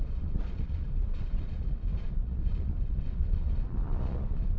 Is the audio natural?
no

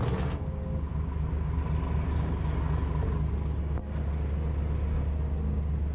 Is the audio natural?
yes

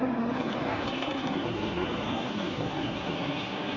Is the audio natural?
no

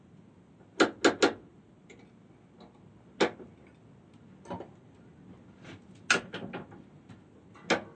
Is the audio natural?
yes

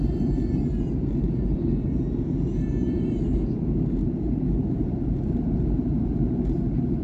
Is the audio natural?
no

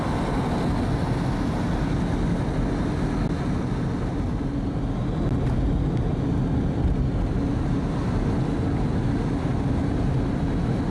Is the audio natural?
yes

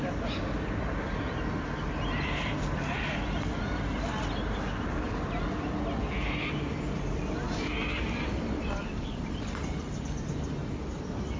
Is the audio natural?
yes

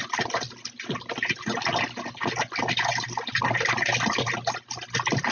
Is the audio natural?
yes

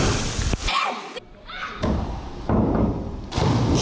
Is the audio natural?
yes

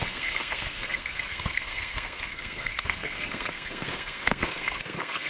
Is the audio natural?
no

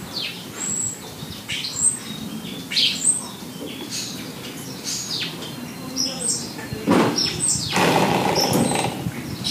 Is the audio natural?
yes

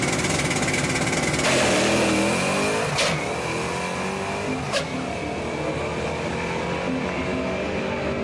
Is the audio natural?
yes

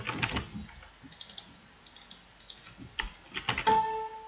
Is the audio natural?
yes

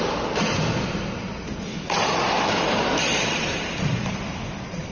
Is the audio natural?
yes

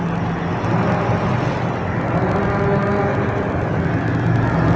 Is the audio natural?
yes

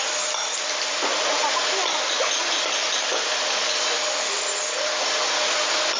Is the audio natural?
yes